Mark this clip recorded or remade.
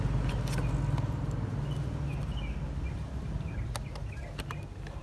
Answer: recorded